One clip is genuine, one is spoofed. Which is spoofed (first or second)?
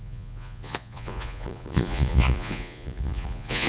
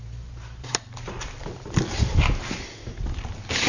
first